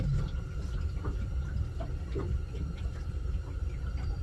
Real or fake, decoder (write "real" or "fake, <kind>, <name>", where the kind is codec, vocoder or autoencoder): real